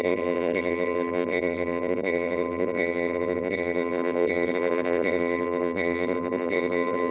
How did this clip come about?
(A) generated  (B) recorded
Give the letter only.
A